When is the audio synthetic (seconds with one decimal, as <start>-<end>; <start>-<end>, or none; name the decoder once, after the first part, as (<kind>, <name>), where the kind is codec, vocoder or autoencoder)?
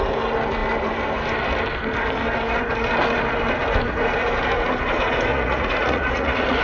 5.3-6.6 (vocoder, Vocos)